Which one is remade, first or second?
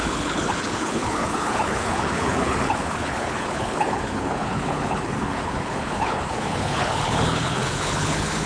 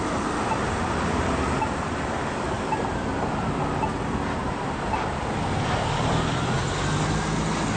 first